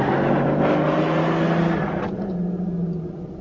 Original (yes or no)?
yes